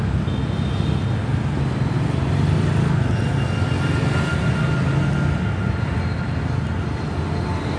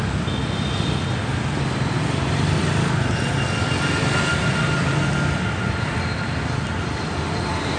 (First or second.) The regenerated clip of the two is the second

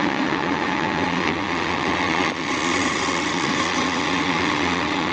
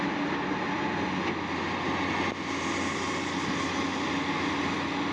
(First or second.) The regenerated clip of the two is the first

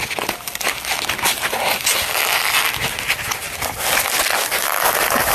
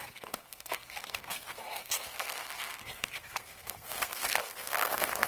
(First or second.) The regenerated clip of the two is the second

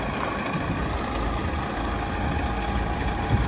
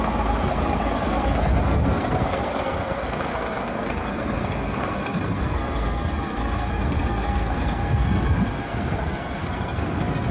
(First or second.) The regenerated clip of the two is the second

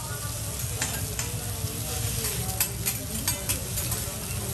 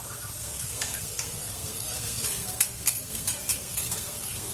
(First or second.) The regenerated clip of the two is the second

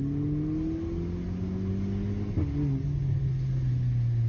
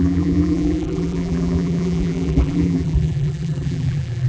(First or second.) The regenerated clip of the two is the second